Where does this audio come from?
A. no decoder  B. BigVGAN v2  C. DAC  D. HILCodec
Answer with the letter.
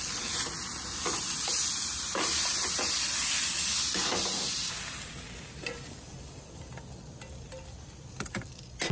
A